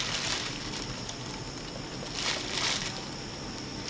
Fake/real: real